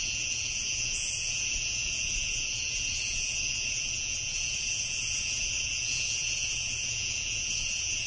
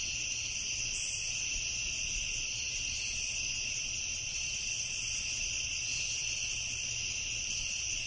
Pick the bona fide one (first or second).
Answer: second